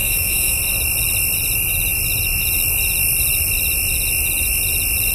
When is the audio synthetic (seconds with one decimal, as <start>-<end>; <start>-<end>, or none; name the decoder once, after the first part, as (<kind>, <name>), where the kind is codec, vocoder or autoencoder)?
0.0-0.6 (autoencoder, DAC-VAE)

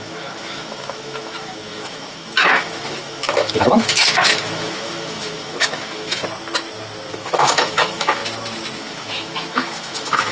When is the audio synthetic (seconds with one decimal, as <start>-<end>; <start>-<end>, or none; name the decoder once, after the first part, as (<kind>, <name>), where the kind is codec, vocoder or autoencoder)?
0.0-6.2 (autoencoder, DAC-VAE); 7.1-8.2; 8.8-10.3

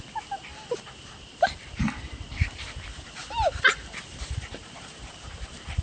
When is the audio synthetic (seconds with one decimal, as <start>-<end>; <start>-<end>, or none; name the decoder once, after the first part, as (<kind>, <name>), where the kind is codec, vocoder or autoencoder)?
none

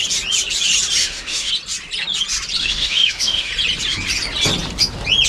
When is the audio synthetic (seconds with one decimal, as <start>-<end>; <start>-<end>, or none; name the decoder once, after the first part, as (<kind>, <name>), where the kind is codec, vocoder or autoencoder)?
1.0-1.5 (autoencoder, DAC-VAE); 2.6-3.5

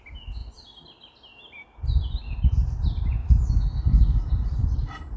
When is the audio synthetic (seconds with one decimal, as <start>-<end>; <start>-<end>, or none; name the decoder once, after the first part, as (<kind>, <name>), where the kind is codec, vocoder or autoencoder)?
3.2-4.3 (autoencoder, DAC-VAE)

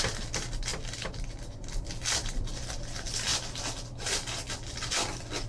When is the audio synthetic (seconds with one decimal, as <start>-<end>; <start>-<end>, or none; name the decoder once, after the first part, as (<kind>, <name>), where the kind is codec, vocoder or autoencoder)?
none